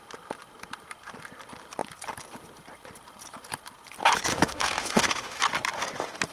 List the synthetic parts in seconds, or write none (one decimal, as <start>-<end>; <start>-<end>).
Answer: 4.3-5.4